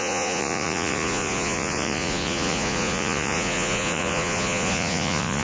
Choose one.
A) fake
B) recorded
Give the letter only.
A